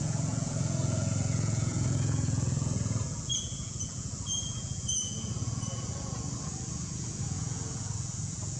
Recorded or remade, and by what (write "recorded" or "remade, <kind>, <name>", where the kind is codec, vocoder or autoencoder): remade, vocoder, Vocos